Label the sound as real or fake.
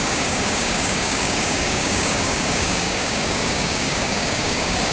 fake